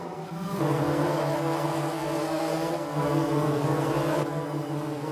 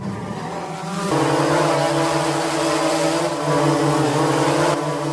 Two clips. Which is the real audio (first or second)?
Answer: second